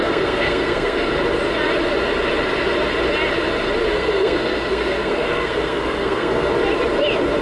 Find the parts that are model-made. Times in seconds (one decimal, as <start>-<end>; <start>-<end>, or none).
0.0-1.1; 3.9-6.5